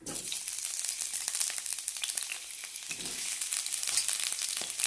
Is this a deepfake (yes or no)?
no